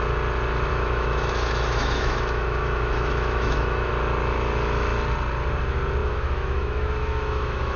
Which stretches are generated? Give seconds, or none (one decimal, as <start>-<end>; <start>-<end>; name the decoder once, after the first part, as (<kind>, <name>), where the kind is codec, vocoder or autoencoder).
0.7-3.9 (autoencoder, DAC-VAE); 6.0-7.8

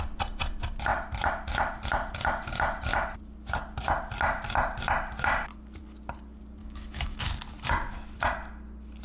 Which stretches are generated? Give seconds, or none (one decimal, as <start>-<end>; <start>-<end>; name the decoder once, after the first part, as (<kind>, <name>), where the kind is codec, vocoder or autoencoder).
6.6-7.2 (autoencoder, DAC-VAE)

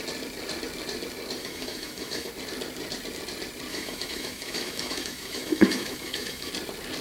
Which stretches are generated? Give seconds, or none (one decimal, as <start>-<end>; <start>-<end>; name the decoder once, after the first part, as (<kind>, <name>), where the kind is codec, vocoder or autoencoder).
1.4-2.3 (autoencoder, DAC-VAE); 3.7-6.5

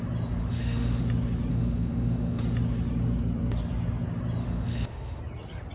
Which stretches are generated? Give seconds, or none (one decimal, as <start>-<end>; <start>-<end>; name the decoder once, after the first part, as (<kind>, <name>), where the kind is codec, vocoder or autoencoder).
0.4-1.0 (autoencoder, DAC-VAE); 1.5-2.4; 4.4-5.2

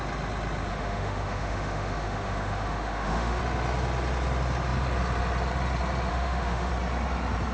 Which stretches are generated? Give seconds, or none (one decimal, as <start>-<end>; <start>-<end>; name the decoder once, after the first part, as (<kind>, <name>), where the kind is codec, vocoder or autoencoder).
0.7-3.4 (autoencoder, DAC-VAE); 6.1-6.7

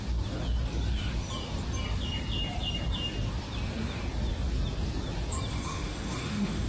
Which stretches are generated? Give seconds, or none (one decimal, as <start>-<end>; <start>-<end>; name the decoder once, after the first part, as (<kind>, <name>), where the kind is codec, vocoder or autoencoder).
5.5-6.7 (autoencoder, DAC-VAE)

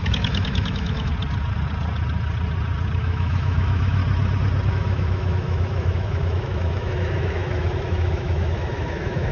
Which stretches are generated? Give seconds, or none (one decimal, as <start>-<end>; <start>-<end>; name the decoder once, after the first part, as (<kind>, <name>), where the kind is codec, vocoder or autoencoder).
0.0-1.1 (autoencoder, DAC-VAE); 3.0-4.0; 4.7-9.3